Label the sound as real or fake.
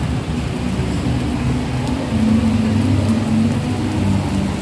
real